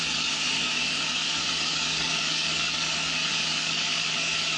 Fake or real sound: fake